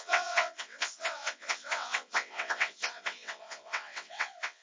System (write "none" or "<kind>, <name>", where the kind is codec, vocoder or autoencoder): vocoder, WaveNeXt